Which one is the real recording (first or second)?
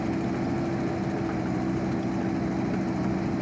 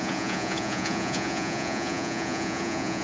first